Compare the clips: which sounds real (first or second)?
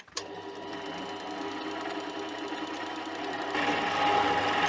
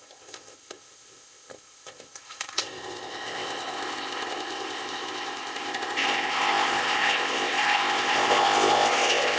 first